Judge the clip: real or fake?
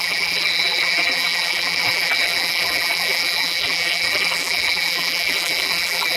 fake